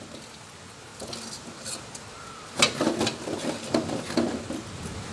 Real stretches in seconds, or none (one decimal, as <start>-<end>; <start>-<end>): 0.0-5.1